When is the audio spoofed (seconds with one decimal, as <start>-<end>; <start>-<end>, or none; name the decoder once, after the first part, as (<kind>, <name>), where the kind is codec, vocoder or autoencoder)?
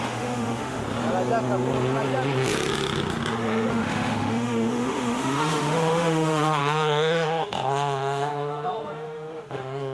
0.0-0.8 (autoencoder, DAC-VAE); 3.7-9.9